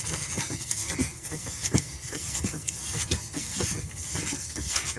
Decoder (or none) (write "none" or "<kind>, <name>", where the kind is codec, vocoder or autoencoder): codec, SNAC